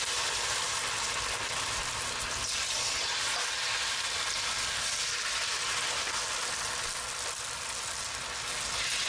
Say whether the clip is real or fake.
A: real